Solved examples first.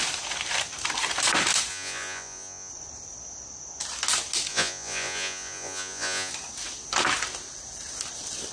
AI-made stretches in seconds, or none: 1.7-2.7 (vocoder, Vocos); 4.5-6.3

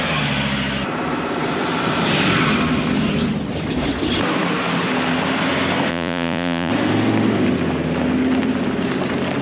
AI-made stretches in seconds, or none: 5.9-6.7 (vocoder, Vocos)